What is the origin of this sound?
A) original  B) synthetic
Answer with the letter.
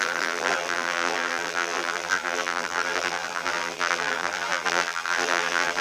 B